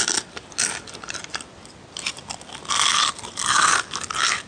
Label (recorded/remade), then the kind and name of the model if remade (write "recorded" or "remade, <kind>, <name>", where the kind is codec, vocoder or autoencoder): recorded